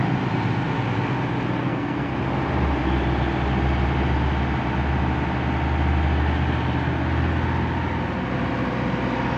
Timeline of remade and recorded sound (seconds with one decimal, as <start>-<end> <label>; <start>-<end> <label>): 0.0-1.6 recorded; 1.6-2.1 remade; 2.1-9.4 recorded